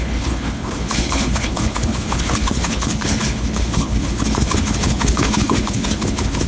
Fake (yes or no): yes